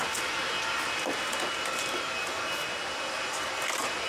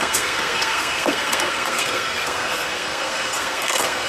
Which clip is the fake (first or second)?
second